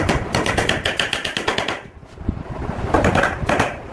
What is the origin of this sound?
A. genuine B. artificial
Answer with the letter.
A